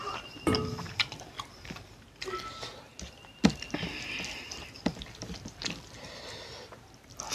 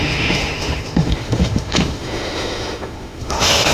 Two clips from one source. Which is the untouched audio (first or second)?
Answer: first